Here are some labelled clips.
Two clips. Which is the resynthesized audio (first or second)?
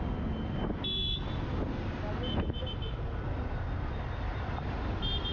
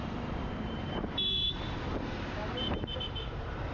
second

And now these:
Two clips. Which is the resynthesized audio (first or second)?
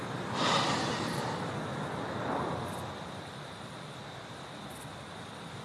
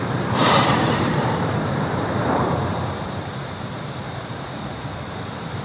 second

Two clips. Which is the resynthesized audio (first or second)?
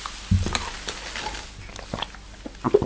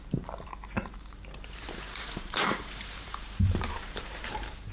second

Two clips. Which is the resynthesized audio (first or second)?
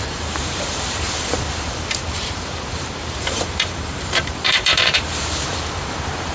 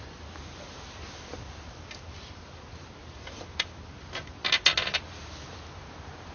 first